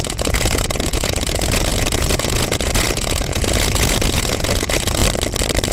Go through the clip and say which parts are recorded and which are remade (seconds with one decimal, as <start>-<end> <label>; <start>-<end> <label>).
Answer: 0.0-5.0 remade; 5.0-5.7 recorded